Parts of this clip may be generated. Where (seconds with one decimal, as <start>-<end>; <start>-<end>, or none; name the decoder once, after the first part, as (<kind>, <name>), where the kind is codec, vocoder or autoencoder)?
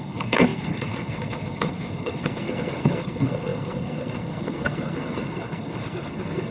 0.0-6.5 (codec, SNAC)